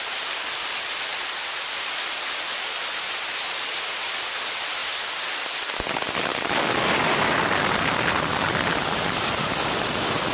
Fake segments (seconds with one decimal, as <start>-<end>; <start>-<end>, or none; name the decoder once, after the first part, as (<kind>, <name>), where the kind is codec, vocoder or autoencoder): none